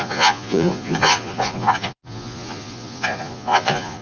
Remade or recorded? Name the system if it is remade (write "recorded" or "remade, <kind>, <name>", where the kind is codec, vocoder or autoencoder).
remade, vocoder, Vocos